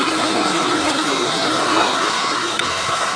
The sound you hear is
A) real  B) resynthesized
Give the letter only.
B